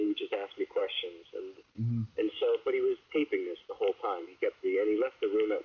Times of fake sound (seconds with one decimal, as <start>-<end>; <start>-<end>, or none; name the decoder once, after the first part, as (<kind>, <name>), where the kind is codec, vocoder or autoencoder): 0.0-0.8 (autoencoder, DAC-VAE); 4.2-5.6